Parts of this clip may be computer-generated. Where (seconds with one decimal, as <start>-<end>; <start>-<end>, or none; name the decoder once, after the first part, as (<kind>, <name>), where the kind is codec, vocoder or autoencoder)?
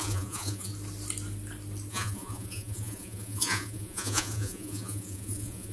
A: 0.0-0.7 (vocoder, Vocos); 1.9-5.7